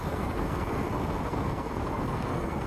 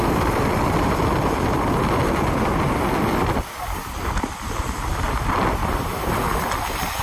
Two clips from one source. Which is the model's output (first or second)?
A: first